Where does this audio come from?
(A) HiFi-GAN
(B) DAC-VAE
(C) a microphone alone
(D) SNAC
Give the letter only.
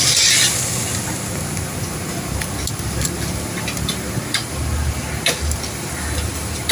C